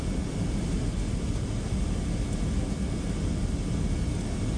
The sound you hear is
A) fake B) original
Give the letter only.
B